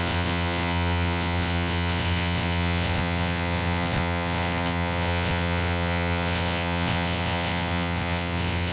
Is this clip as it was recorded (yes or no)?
no